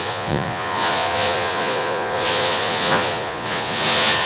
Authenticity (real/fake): fake